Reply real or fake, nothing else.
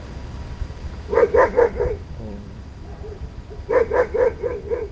fake